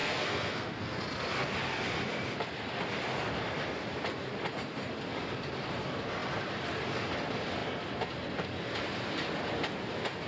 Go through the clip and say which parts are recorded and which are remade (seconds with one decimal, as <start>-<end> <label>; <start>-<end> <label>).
0.0-1.0 remade; 1.0-10.3 recorded